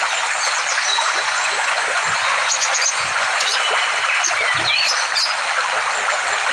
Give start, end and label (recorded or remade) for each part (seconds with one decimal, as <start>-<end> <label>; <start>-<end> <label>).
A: 0.0-0.9 recorded; 0.9-3.7 remade; 3.7-6.5 recorded